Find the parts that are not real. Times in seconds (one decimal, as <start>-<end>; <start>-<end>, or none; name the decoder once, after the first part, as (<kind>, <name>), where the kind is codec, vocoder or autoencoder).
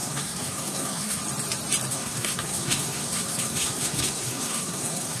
0.0-1.2 (codec, SNAC); 1.9-5.2